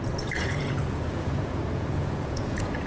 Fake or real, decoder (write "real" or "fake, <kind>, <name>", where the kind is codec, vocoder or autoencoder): fake, vocoder, Vocos